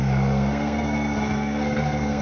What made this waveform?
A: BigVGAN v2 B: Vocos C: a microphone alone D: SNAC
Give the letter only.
D